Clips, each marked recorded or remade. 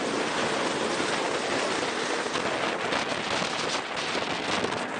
recorded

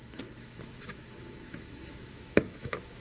remade